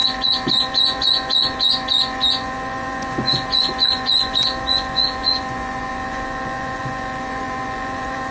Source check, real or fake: fake